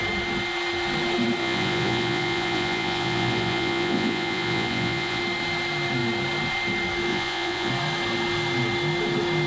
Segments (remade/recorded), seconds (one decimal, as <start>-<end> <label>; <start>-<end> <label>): 0.0-1.4 recorded; 1.4-5.2 remade; 5.2-7.1 recorded; 7.1-7.7 remade; 7.7-9.5 recorded